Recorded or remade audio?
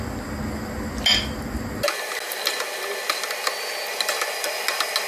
recorded